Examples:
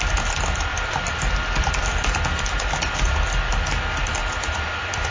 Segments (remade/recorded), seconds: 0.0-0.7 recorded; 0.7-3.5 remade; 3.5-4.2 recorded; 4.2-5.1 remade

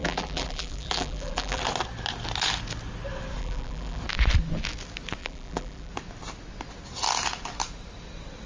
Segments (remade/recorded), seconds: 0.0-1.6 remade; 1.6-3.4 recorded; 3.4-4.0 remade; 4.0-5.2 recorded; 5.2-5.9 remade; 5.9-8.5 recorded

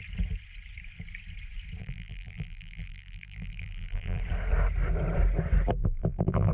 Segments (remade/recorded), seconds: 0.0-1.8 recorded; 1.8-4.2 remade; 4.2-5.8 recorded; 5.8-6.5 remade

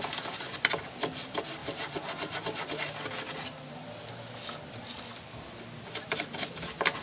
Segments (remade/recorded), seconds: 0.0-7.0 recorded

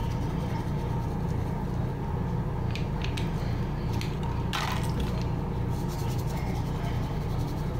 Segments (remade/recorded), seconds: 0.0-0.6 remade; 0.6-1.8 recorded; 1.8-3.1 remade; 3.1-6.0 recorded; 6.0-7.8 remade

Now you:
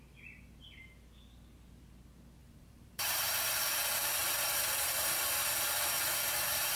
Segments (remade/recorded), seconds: 0.0-2.4 recorded; 2.4-3.6 remade; 3.6-4.2 recorded; 4.2-5.2 remade; 5.2-6.1 recorded; 6.1-6.8 remade

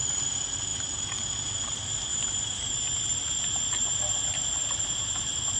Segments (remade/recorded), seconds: 0.0-0.7 recorded; 0.7-1.5 remade; 1.5-2.1 recorded; 2.1-5.6 remade